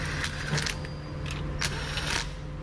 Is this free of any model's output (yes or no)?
yes